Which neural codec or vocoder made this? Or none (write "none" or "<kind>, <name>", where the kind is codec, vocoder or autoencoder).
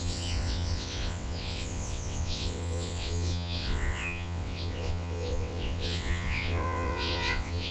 vocoder, WaveNeXt